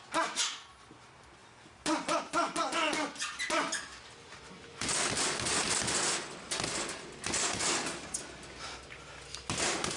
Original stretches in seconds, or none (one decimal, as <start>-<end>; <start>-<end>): 0.0-1.4; 2.7-10.0